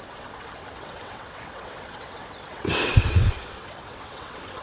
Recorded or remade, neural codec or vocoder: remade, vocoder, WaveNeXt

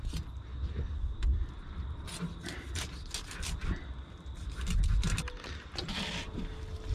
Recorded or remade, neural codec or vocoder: recorded